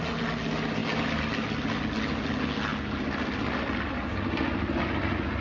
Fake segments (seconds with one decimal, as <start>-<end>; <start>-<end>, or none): none